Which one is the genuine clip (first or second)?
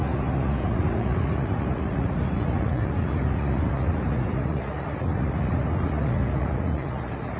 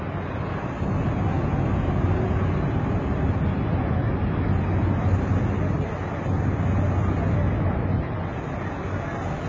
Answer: second